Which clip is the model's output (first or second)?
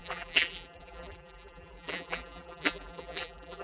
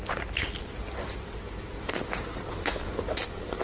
first